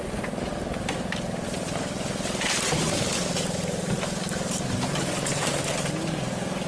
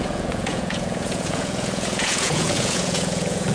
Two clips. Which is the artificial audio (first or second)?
second